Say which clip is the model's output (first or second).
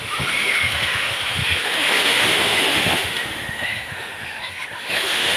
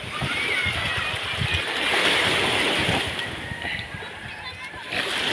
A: first